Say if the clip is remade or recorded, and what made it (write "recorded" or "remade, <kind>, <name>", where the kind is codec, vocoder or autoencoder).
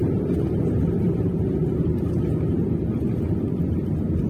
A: remade, vocoder, BigVGAN v2